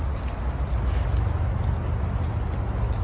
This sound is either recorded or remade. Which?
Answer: recorded